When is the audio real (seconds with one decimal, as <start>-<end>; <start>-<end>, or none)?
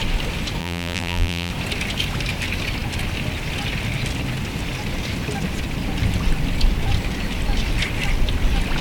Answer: 0.0-0.6; 1.5-8.8